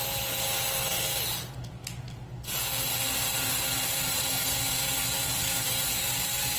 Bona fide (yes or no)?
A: yes